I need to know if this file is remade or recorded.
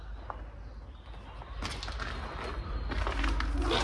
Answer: recorded